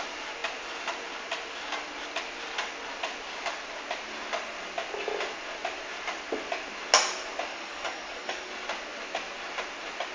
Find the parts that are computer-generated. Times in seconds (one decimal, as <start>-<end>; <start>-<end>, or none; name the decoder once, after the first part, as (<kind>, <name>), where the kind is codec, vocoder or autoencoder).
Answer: 7.5-8.5 (codec, DAC)